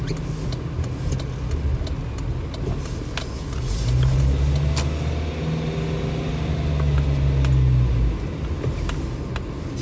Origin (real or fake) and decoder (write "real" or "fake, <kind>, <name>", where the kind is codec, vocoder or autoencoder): real